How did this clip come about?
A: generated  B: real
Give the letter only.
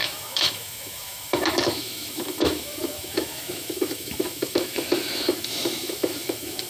A